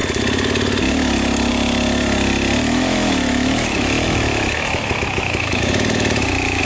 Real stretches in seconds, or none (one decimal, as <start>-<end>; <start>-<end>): 0.0-2.6